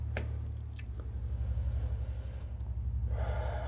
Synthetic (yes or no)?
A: no